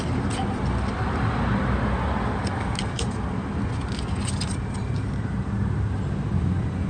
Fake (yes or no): no